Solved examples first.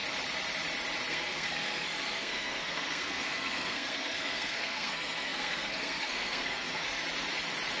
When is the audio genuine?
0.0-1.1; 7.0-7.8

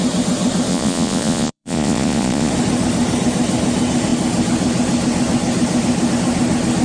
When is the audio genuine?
0.0-0.7; 2.5-6.8

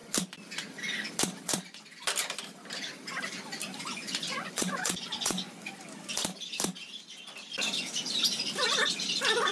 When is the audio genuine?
0.0-4.0; 5.7-9.5

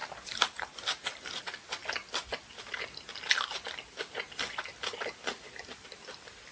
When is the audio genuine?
0.0-6.5

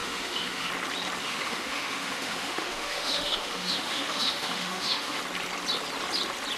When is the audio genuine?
0.7-1.2; 5.2-6.6

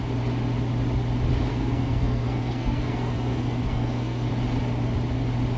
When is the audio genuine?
0.0-1.5; 4.3-5.6

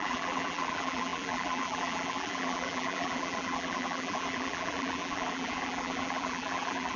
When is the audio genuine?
none

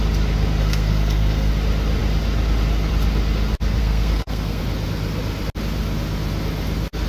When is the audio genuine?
0.0-0.6; 1.5-3.8; 4.6-7.1